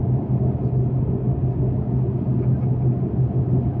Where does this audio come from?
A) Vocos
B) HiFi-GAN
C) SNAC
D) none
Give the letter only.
D